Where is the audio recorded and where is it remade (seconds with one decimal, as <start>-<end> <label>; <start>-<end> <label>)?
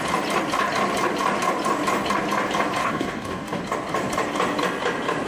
0.0-2.8 recorded; 2.8-3.6 remade; 3.6-5.3 recorded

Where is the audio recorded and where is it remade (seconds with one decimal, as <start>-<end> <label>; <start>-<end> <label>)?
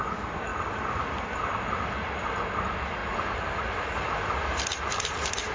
0.0-5.5 recorded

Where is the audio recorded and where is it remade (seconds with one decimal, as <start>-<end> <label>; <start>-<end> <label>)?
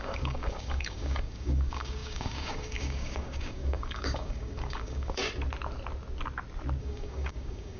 0.0-5.2 remade; 5.2-6.8 recorded; 6.8-7.8 remade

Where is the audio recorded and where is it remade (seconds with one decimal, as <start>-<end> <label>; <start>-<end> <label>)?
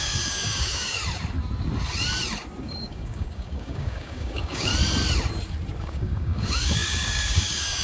0.0-1.0 remade; 1.0-2.6 recorded; 2.6-4.7 remade; 4.7-5.8 recorded; 5.8-7.8 remade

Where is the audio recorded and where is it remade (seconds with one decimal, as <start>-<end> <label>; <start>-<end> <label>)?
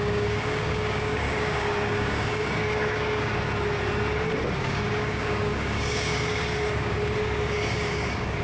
0.0-3.3 remade; 3.3-4.6 recorded; 4.6-8.4 remade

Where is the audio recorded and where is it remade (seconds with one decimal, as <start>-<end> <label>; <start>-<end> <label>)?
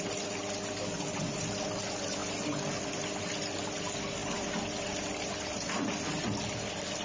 0.0-7.0 recorded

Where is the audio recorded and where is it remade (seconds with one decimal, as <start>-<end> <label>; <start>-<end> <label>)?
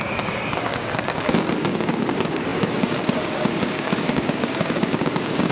0.0-5.5 remade